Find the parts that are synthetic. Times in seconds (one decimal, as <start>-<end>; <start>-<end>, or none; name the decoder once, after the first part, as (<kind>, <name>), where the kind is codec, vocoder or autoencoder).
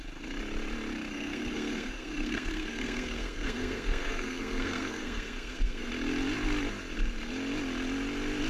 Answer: 1.1-5.9 (codec, SNAC)